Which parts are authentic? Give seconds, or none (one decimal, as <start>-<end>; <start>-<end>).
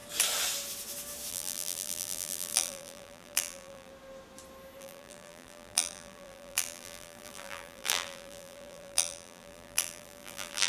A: 0.0-1.3; 3.9-4.8